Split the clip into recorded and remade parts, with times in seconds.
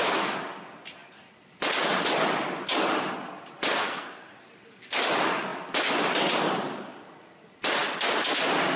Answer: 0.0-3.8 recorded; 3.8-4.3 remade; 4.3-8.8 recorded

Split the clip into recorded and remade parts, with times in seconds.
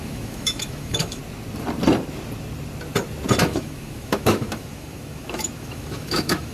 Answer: 0.0-1.2 remade; 1.2-3.4 recorded; 3.4-6.5 remade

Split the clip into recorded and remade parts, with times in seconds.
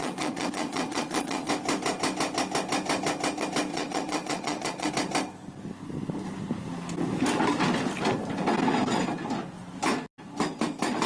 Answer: 0.0-1.5 remade; 1.5-3.7 recorded; 3.7-4.9 remade; 4.9-11.1 recorded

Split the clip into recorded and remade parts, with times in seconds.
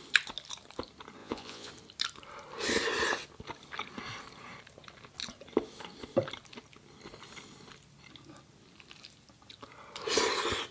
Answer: 0.0-1.2 recorded; 1.2-1.7 remade; 1.7-10.7 recorded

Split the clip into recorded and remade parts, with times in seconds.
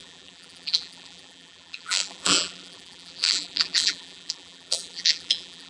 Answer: 0.0-5.7 remade